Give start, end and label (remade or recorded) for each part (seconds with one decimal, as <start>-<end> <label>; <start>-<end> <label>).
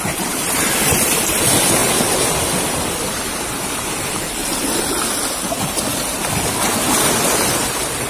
0.0-4.4 remade; 4.4-6.3 recorded; 6.3-8.1 remade